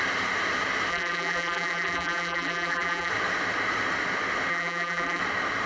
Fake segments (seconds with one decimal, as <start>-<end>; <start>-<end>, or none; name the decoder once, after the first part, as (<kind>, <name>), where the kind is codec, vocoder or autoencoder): 0.9-3.1 (vocoder, BigVGAN v2); 4.5-5.2